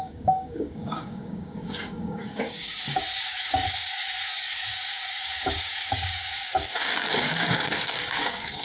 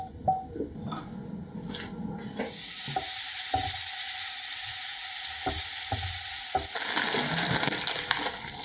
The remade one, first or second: first